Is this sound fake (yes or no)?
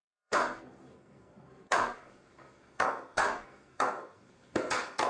yes